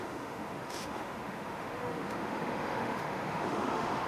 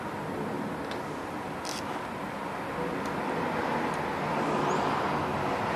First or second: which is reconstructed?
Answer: first